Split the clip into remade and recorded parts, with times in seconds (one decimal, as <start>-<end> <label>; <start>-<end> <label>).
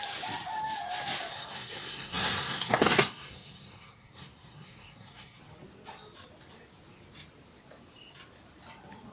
0.0-1.3 recorded; 1.3-5.4 remade; 5.4-9.1 recorded